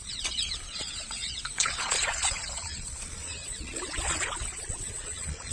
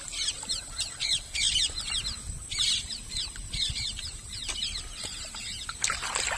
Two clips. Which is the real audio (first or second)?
second